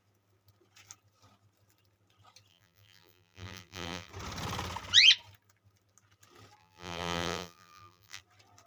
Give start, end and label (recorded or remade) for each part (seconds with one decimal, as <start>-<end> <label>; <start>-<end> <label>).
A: 0.0-2.5 recorded; 2.5-4.1 remade; 4.1-6.6 recorded; 6.6-8.2 remade; 8.2-8.7 recorded